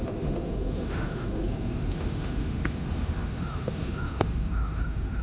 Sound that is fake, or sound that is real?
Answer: fake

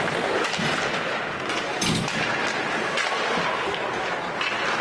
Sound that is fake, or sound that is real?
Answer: real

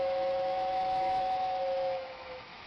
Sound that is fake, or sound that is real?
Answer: fake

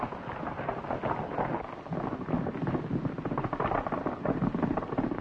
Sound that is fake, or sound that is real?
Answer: real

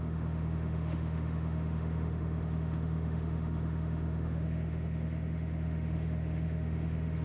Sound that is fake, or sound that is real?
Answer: fake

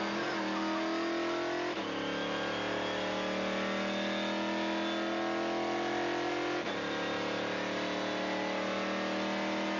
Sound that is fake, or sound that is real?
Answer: real